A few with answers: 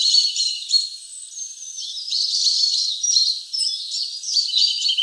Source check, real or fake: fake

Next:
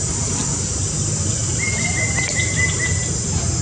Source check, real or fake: real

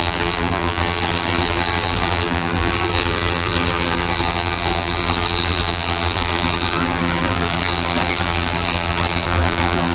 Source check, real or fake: fake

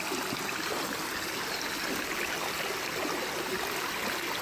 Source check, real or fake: real